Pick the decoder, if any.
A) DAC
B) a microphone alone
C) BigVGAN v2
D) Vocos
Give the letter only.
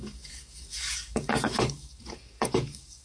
A